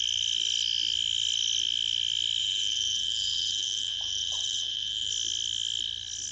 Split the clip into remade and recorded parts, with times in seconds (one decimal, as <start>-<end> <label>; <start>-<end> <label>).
0.0-2.4 recorded; 2.4-5.1 remade; 5.1-6.3 recorded